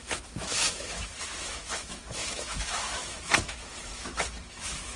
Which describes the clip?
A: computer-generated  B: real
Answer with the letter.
A